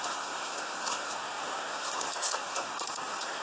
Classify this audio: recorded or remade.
remade